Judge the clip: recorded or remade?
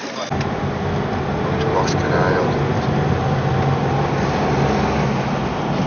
recorded